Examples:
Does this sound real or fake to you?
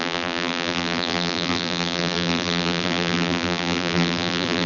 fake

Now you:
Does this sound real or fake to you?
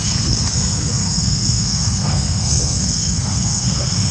fake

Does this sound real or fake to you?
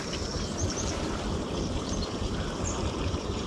fake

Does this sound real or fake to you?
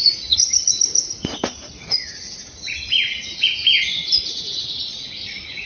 fake